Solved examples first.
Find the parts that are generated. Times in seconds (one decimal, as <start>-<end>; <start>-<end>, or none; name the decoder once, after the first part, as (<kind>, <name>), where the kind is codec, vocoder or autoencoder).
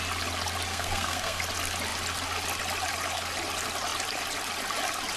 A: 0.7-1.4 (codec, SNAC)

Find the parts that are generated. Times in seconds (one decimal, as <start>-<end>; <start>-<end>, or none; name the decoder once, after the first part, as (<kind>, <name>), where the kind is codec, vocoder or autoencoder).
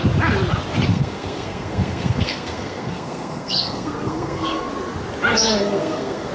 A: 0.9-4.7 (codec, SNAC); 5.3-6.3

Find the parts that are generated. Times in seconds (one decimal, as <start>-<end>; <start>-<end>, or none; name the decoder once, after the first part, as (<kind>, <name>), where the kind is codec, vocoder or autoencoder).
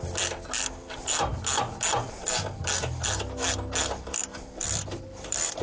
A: none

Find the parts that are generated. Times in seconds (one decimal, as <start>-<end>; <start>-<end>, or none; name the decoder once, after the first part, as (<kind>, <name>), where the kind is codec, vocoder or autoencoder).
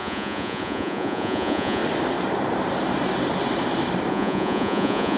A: 0.0-1.8 (vocoder, Vocos); 4.1-5.2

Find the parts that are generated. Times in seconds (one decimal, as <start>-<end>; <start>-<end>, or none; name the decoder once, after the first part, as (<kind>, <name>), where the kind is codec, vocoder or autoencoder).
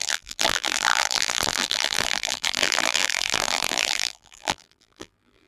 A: 0.0-5.5 (vocoder, BigVGAN v2)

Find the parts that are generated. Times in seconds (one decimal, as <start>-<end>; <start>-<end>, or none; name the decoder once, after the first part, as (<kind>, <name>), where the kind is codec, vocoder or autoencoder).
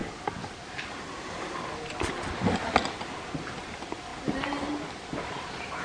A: none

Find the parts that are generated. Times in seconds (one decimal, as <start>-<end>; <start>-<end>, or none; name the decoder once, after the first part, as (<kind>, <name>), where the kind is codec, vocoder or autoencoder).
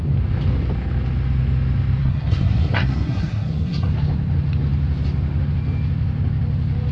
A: 2.0-3.9 (codec, SNAC)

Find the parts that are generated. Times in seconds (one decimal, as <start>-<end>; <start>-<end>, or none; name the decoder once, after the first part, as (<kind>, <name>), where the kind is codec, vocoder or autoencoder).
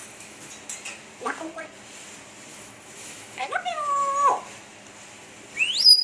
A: 0.0-0.5 (autoencoder, DAC-VAE); 2.5-3.4